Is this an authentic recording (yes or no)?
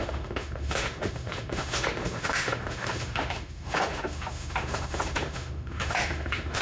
no